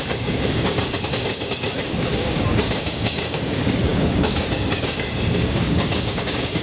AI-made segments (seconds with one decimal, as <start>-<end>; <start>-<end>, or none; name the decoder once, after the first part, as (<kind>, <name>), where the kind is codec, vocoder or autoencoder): 0.0-6.6 (codec, DAC)